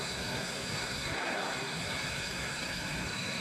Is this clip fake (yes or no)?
yes